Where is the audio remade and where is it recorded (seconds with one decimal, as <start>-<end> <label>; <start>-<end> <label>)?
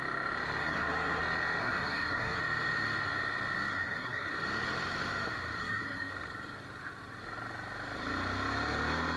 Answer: 0.0-0.6 recorded; 0.6-1.2 remade; 1.2-1.6 recorded; 1.6-2.4 remade; 2.4-3.7 recorded; 3.7-4.3 remade; 4.3-5.6 recorded; 5.6-6.1 remade; 6.1-9.2 recorded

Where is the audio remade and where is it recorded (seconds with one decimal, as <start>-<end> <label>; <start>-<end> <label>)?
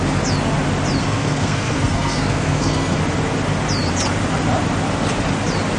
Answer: 0.0-1.0 recorded; 1.0-3.0 remade; 3.0-5.8 recorded